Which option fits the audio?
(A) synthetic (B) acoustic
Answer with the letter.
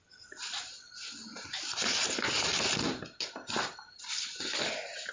B